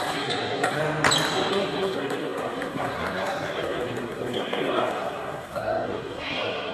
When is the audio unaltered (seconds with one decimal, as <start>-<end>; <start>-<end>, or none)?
0.8-1.5